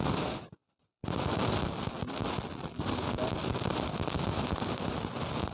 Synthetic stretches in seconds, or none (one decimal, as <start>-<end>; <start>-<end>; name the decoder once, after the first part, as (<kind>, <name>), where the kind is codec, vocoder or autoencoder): none